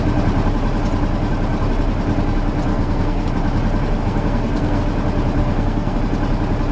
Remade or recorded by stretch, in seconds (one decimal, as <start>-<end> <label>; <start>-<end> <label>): 0.0-2.7 recorded; 2.7-3.3 remade; 3.3-4.0 recorded; 4.0-4.8 remade; 4.8-5.4 recorded; 5.4-6.0 remade; 6.0-6.7 recorded